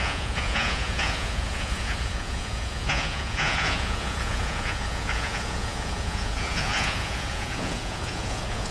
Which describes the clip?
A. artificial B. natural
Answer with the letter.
A